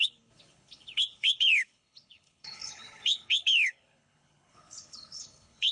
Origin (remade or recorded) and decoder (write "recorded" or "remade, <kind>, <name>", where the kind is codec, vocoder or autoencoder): remade, codec, HILCodec